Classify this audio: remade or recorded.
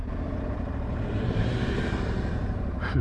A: remade